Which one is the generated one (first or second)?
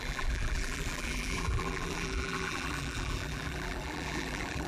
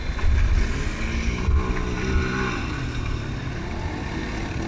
first